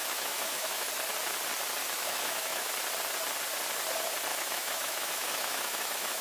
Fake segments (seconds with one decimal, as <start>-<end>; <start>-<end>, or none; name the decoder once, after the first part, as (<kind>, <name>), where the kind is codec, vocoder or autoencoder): 0.0-0.9 (autoencoder, DAC-VAE); 1.8-2.7; 4.3-6.2